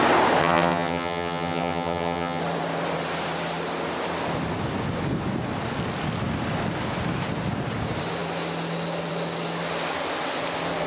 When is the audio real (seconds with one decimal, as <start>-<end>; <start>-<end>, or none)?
0.0-0.4; 2.4-10.9